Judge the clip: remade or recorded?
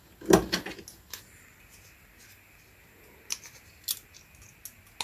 recorded